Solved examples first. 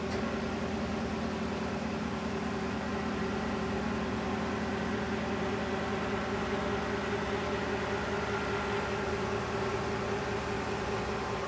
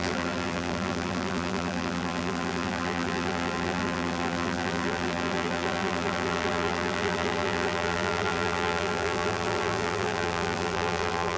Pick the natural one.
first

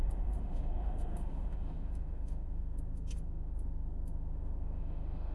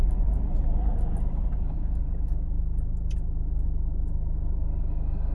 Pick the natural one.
second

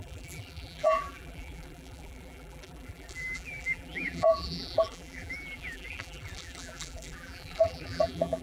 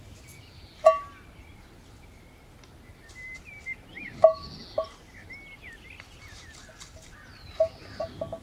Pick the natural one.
second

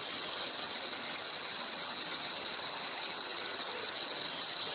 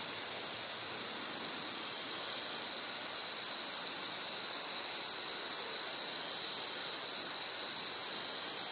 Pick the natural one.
second